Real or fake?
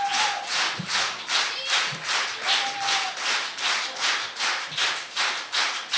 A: real